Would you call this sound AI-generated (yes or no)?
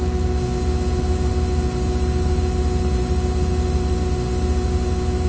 no